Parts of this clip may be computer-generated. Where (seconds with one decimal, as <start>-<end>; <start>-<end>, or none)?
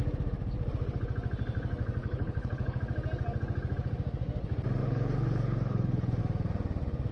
2.0-2.8; 4.8-6.2